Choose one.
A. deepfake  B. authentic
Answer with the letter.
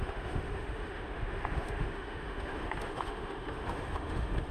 A